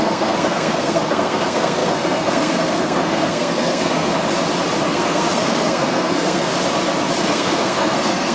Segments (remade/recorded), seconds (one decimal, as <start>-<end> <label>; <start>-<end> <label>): 0.0-4.1 remade; 4.1-4.8 recorded; 4.8-6.5 remade; 6.5-7.2 recorded; 7.2-8.3 remade